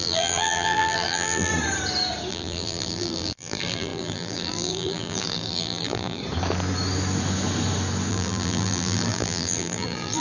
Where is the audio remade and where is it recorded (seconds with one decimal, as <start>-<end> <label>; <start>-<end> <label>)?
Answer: 0.0-1.5 remade; 1.5-2.3 recorded; 2.3-6.2 remade; 6.2-8.1 recorded; 8.1-10.2 remade